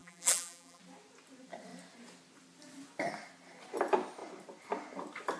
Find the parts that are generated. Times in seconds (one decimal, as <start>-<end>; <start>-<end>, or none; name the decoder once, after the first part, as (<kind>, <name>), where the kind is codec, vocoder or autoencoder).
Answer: 0.0-0.8 (vocoder, BigVGAN v2)